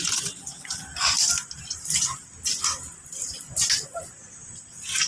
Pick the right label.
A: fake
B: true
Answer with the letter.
B